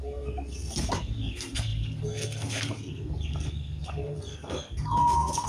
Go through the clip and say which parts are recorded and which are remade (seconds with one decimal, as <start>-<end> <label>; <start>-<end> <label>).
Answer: 0.0-5.5 remade